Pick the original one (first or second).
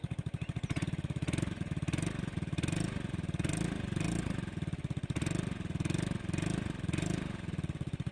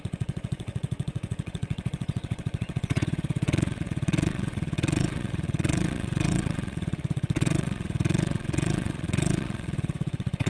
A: first